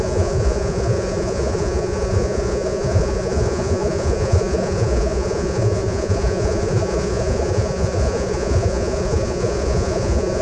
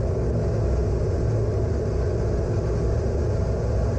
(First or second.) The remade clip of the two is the first